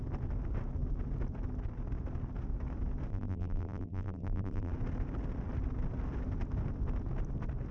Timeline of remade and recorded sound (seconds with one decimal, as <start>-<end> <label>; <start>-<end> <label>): 0.0-3.1 recorded; 3.1-4.7 remade; 4.7-7.7 recorded